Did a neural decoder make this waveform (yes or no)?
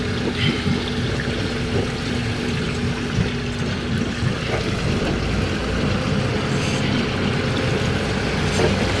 no